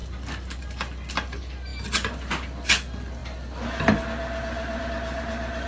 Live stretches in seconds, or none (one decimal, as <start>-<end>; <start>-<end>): 0.0-5.7

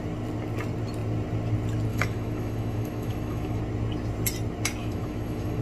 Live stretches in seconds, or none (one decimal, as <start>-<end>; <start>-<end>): 0.0-1.9; 3.6-4.8

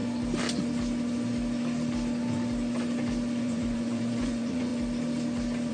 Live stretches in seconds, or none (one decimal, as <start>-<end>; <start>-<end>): 0.0-3.4; 4.7-5.7

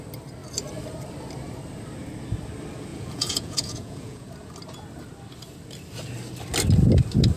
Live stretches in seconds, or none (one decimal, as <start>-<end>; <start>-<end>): 0.0-2.9; 4.3-7.4

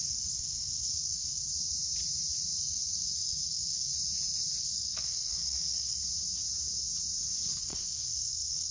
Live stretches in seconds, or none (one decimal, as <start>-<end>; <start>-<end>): 1.5-2.6; 3.9-4.6; 6.0-7.5

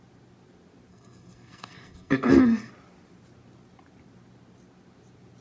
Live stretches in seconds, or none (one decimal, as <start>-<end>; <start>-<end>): 0.0-0.9; 2.7-5.4

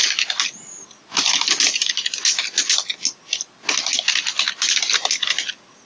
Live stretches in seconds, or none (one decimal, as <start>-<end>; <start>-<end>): 0.0-5.9

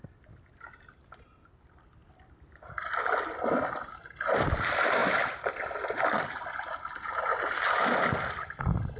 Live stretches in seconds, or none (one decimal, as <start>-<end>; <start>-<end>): 0.0-9.0